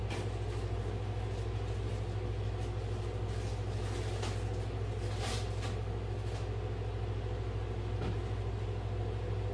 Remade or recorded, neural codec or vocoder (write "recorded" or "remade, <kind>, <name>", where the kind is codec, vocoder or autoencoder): recorded